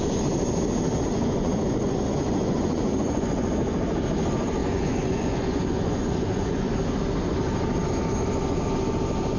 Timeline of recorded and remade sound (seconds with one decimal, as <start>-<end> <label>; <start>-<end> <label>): 0.0-1.1 recorded; 1.1-3.5 remade; 3.5-4.6 recorded; 4.6-6.7 remade; 6.7-9.4 recorded